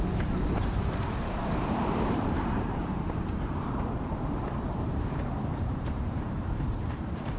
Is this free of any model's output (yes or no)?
no